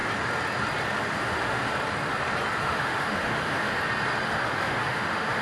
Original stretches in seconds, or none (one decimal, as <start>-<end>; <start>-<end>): 0.0-1.0; 1.7-2.6; 3.8-4.3